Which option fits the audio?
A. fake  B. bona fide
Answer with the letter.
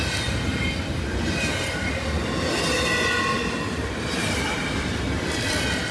B